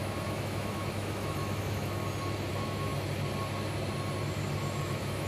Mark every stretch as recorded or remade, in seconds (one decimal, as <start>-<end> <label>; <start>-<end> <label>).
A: 0.0-2.0 remade; 2.0-2.5 recorded; 2.5-2.9 remade; 2.9-4.8 recorded; 4.8-5.3 remade